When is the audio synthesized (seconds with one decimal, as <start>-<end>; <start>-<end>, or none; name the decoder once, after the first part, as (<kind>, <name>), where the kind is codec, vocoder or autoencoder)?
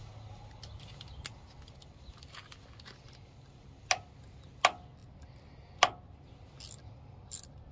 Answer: none